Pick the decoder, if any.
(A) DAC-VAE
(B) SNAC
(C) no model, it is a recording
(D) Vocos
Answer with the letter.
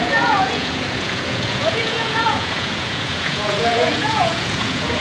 D